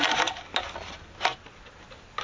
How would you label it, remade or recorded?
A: recorded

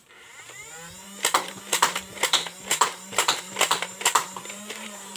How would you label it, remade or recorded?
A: remade